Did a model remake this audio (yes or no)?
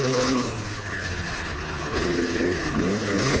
yes